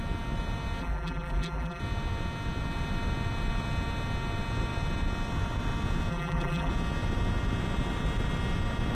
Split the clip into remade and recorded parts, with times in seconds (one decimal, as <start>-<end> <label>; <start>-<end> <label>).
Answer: 0.0-0.8 recorded; 0.8-1.8 remade; 1.8-6.1 recorded; 6.1-6.7 remade; 6.7-8.9 recorded